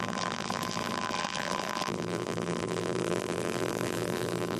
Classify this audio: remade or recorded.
remade